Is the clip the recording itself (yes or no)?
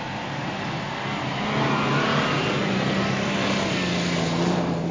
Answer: yes